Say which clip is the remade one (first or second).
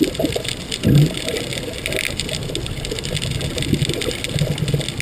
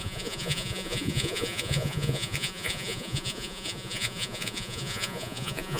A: second